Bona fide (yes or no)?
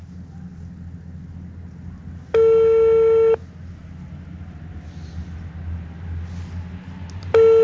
yes